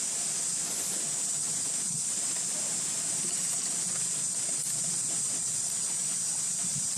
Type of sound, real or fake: real